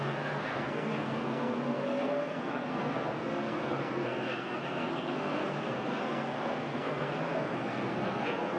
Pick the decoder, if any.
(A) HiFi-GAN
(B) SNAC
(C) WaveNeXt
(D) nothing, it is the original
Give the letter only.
B